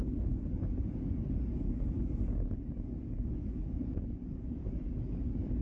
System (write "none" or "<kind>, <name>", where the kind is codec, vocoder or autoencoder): codec, DAC